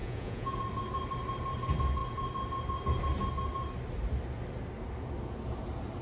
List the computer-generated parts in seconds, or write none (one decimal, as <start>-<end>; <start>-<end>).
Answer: 0.0-0.6